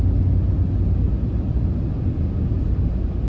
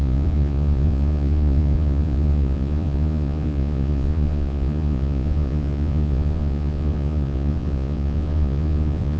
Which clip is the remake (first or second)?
second